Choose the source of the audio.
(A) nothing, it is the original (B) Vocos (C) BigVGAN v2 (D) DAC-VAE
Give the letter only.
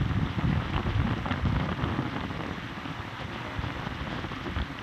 A